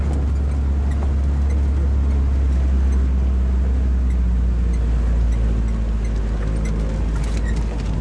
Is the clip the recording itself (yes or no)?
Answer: yes